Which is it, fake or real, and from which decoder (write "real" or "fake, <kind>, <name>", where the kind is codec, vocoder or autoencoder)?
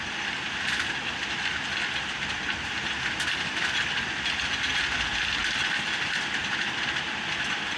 real